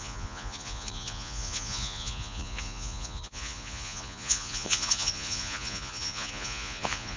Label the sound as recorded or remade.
remade